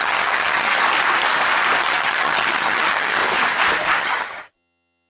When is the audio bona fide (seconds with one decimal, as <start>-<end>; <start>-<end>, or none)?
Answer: 0.7-1.8; 3.2-4.0